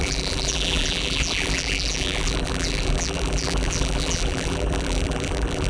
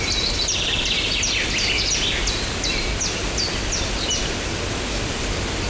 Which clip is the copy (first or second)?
first